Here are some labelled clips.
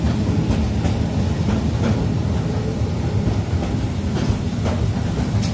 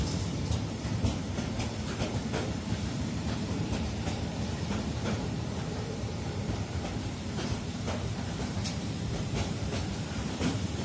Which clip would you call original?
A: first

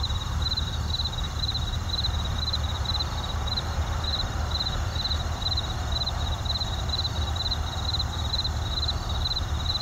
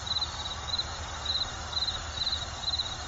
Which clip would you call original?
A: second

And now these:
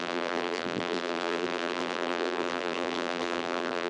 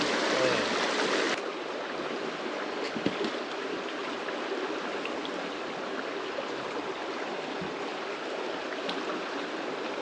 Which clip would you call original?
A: second